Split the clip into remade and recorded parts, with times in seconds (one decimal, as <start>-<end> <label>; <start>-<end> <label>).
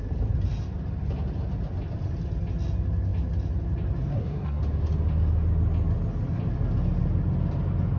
0.0-4.1 recorded; 4.1-4.6 remade; 4.6-8.0 recorded